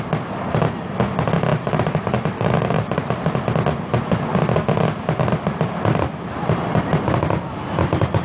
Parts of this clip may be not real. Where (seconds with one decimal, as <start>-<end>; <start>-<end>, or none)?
1.5-3.4

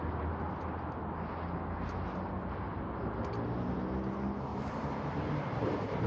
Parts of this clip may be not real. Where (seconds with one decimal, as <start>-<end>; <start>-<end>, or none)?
4.5-6.1

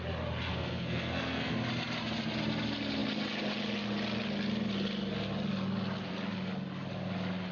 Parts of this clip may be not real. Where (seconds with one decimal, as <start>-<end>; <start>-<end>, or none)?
0.5-1.5

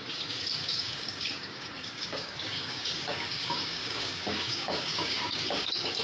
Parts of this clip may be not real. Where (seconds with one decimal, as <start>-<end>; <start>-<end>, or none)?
0.0-6.0

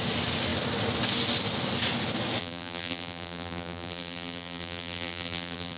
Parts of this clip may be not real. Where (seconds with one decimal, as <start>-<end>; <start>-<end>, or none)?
2.4-5.8

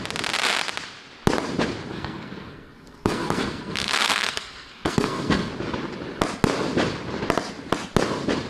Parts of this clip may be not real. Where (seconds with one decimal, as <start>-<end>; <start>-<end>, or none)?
1.9-5.5

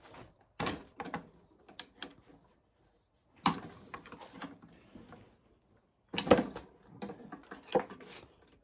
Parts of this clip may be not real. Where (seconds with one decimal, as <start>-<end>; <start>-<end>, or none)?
none

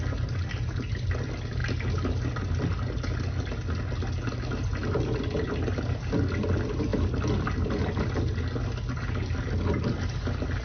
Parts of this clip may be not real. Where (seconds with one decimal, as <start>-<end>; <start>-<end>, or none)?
none